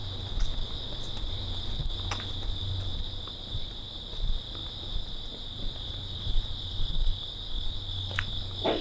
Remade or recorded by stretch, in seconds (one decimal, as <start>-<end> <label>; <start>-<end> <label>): 0.0-8.8 recorded

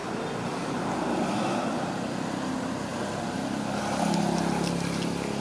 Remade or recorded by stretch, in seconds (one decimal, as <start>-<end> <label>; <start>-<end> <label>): 0.0-2.9 recorded; 2.9-3.8 remade; 3.8-5.4 recorded

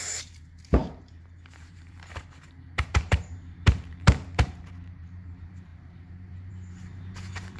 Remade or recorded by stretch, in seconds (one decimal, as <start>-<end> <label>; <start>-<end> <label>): 0.0-7.6 remade